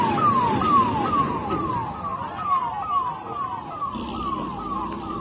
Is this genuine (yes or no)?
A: no